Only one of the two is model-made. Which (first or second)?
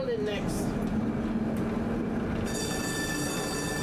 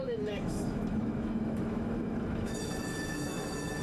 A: second